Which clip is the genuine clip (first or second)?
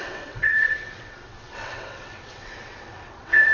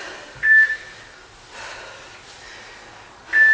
second